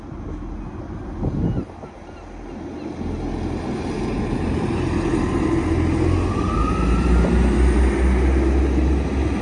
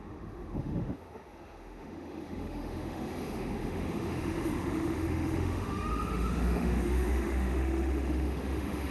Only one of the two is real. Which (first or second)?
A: first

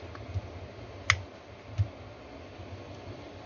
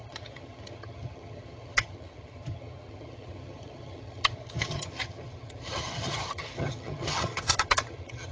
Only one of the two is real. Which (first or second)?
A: first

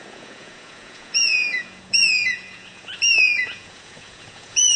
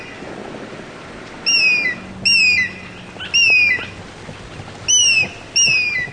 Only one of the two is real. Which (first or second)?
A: second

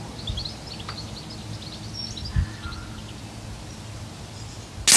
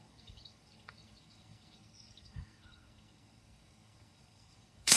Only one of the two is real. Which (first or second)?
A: first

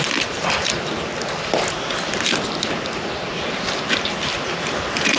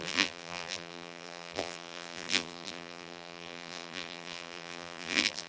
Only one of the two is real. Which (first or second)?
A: first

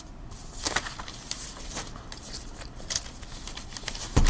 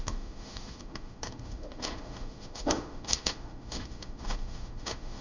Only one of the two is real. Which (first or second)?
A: first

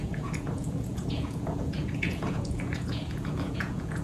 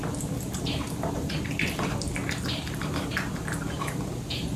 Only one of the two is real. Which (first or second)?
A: second